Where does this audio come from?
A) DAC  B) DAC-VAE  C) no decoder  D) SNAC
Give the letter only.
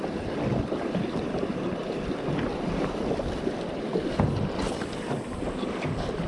C